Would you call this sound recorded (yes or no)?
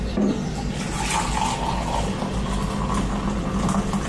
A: yes